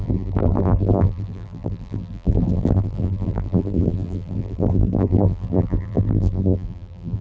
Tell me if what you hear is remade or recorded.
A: remade